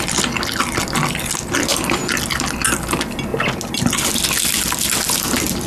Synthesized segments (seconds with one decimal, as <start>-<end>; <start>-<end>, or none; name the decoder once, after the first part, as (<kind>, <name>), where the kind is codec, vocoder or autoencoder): none